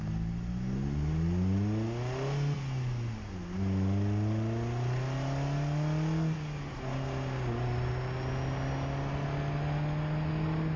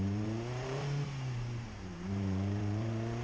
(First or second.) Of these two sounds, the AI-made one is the second